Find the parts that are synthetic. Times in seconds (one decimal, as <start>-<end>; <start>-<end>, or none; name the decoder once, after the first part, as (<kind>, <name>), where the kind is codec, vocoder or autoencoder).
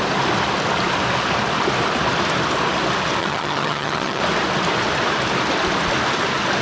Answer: 3.2-4.2 (vocoder, HiFi-GAN)